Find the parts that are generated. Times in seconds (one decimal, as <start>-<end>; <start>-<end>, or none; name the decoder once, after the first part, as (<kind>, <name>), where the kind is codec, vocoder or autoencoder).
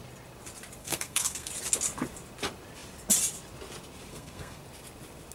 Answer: 0.8-1.5 (codec, SNAC); 4.1-4.6